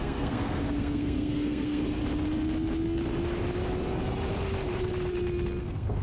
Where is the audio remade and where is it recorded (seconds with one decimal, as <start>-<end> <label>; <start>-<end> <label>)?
0.0-2.0 remade; 2.0-5.6 recorded; 5.6-6.0 remade